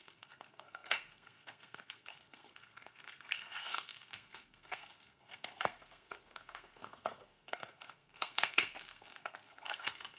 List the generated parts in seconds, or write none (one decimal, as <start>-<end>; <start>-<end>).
0.0-10.2